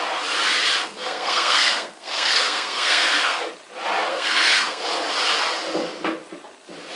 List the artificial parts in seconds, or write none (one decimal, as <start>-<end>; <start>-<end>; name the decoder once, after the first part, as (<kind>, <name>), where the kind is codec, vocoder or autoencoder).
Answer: 0.8-3.4 (codec, SNAC); 4.1-4.8